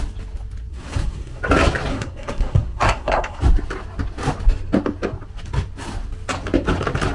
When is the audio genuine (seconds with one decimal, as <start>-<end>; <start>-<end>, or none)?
0.0-0.7; 1.4-1.9; 3.4-7.1